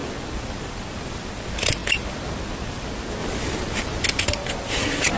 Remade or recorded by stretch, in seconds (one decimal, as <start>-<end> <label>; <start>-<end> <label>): 0.0-5.2 recorded